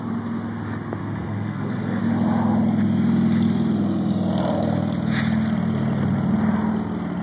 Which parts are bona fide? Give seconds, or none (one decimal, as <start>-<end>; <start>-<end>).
0.0-1.0; 2.0-7.2